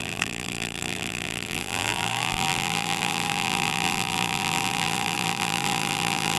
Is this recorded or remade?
remade